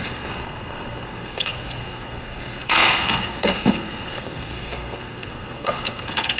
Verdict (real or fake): fake